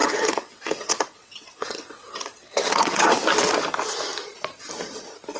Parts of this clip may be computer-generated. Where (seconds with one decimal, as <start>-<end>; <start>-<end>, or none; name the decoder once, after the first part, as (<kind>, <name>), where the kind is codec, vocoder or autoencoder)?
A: 0.0-3.2 (vocoder, WaveNeXt)